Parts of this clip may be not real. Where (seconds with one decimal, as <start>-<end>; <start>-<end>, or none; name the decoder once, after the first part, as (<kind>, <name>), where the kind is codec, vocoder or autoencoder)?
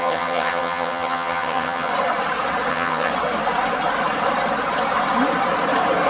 0.0-1.9 (vocoder, HiFi-GAN); 2.7-3.1